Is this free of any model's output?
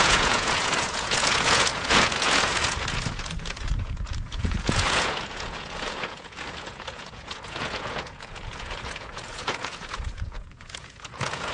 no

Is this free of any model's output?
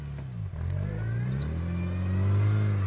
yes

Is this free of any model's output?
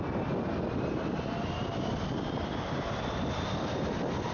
yes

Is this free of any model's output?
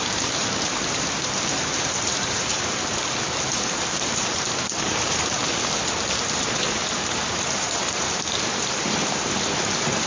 no